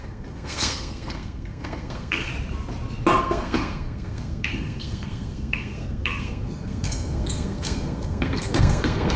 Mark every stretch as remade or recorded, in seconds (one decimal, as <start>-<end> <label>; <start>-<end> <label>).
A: 0.0-2.3 remade; 2.3-3.2 recorded; 3.2-9.2 remade